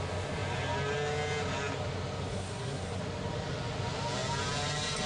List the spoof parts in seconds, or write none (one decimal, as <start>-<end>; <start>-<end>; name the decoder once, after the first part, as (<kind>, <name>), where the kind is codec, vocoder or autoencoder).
2.3-3.0 (codec, SNAC)